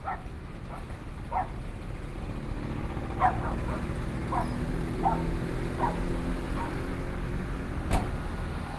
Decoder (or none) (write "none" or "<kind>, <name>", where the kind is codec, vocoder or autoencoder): none